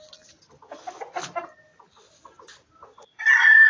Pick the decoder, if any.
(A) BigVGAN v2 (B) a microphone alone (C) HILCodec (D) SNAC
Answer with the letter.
B